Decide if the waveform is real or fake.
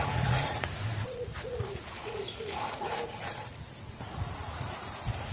fake